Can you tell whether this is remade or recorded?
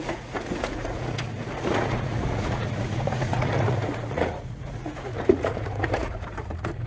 remade